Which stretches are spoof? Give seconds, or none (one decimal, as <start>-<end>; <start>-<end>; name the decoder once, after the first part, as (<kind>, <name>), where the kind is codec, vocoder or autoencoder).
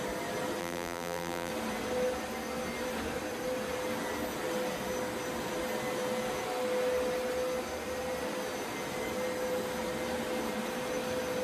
0.6-1.5 (vocoder, BigVGAN v2)